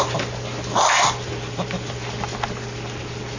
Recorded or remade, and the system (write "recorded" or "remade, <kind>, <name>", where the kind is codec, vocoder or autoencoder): recorded